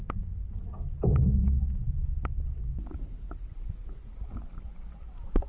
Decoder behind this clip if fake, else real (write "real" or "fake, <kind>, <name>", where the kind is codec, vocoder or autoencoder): real